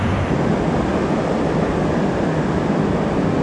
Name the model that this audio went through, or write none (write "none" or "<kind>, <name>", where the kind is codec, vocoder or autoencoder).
none